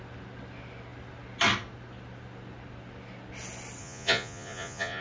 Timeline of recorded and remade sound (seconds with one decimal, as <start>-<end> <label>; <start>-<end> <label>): 0.0-3.8 recorded; 3.8-5.0 remade